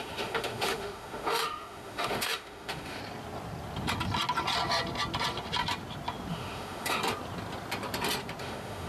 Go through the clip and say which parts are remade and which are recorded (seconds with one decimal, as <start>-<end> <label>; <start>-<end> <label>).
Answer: 0.0-3.0 remade; 3.0-6.3 recorded; 6.3-7.0 remade; 7.0-8.4 recorded; 8.4-8.9 remade